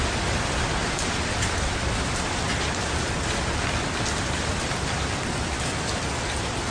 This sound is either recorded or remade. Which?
recorded